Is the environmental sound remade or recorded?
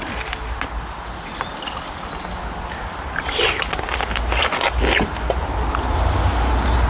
recorded